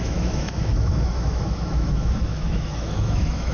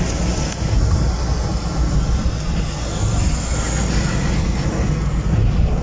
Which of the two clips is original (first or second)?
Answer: second